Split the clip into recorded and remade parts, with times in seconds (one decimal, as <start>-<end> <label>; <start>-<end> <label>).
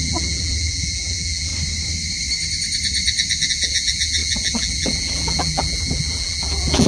0.0-1.5 remade; 1.5-3.5 recorded; 3.5-6.9 remade